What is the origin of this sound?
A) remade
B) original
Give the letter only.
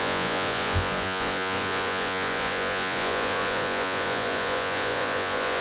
A